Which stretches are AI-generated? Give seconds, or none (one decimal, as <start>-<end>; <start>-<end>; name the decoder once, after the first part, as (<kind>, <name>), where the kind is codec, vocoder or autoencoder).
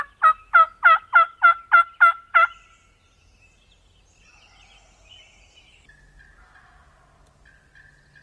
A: none